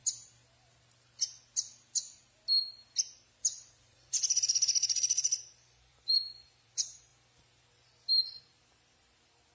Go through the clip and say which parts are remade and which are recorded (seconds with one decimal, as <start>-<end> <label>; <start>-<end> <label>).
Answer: 0.0-3.4 recorded; 3.4-7.1 remade; 7.1-8.4 recorded; 8.4-9.5 remade